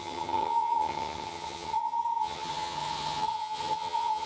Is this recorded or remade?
remade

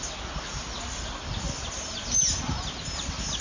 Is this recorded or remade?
recorded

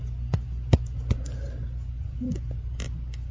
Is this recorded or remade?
recorded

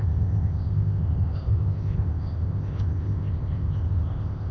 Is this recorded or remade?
remade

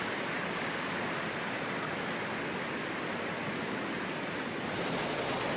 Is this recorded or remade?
recorded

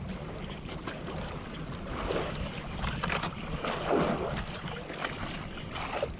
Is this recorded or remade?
recorded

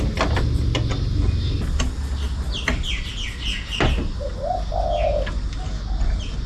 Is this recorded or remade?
recorded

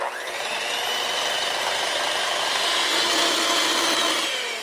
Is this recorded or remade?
recorded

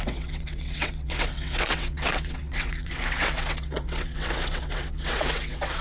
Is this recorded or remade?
remade